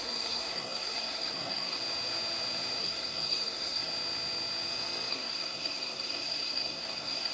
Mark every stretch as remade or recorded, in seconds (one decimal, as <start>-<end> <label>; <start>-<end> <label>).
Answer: 0.0-1.8 remade; 1.8-2.8 recorded; 2.8-3.9 remade; 3.9-5.1 recorded; 5.1-7.3 remade